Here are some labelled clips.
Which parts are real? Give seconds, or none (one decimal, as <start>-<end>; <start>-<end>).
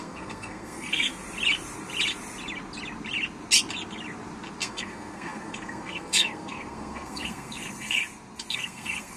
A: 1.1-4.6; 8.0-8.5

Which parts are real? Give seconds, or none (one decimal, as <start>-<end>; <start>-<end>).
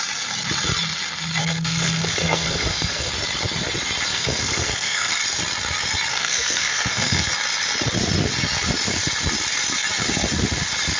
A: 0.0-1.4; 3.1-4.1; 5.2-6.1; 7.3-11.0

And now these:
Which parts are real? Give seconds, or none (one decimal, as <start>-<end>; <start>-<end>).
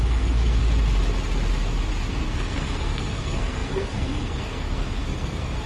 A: 0.6-2.1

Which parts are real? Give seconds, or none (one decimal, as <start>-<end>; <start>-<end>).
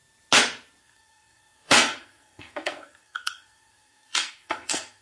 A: 0.0-0.8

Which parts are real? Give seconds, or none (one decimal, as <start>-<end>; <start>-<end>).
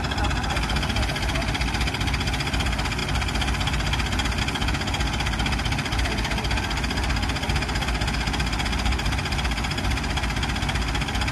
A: 0.0-11.3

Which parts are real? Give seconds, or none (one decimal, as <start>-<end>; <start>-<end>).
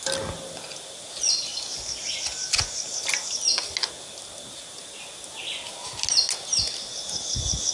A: 0.0-7.7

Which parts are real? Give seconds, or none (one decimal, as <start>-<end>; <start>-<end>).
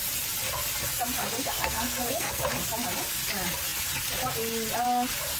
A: 0.0-1.2; 2.4-5.4